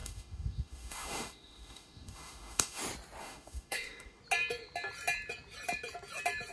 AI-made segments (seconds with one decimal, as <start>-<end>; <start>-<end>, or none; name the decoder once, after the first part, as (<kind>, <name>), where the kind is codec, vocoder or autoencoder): 0.0-2.8 (autoencoder, DAC-VAE); 3.2-4.2